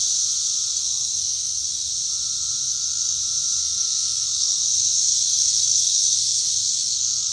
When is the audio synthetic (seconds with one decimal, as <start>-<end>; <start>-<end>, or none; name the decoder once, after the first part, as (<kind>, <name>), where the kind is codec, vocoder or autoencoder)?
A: 0.7-1.9 (codec, SNAC); 2.6-3.2; 3.6-7.3